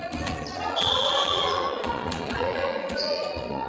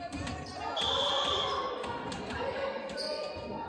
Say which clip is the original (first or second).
second